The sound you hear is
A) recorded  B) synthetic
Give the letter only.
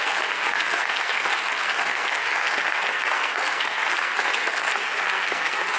B